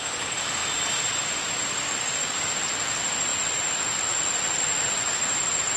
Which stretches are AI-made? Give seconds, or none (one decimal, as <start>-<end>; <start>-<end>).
0.6-2.6